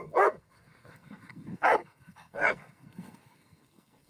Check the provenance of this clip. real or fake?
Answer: fake